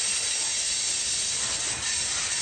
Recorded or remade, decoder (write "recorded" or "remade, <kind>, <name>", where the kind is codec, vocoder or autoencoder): recorded